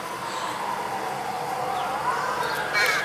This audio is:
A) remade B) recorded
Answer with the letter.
B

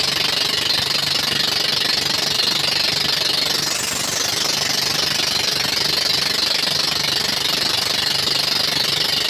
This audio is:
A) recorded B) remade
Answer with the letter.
A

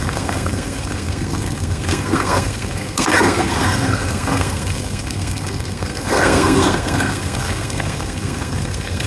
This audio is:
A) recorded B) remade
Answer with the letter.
B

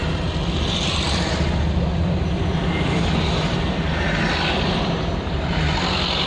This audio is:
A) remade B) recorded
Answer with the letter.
B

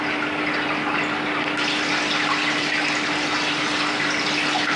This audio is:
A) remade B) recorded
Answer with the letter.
B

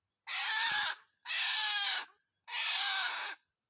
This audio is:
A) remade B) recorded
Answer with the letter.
B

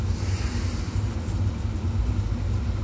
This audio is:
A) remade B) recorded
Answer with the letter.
B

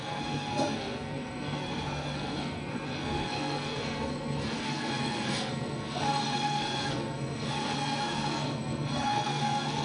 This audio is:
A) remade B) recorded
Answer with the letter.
A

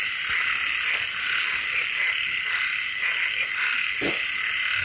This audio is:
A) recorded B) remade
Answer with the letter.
A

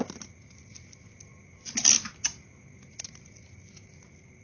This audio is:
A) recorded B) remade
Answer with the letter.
A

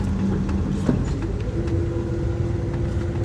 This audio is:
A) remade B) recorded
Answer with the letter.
B